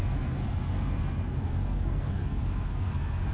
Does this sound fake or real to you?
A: fake